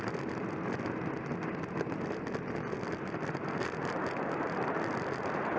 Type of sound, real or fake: real